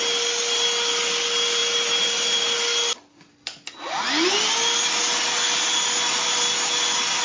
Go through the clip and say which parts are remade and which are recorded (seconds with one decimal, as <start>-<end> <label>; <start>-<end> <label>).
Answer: 0.0-7.2 recorded